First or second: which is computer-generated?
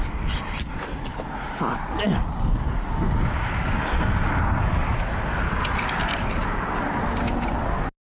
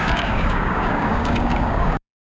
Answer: second